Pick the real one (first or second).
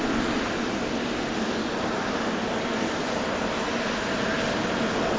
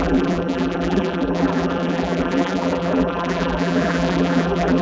first